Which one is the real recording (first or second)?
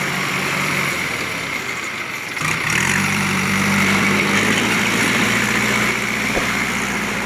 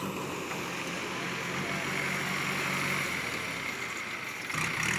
second